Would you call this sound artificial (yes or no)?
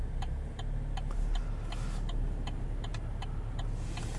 no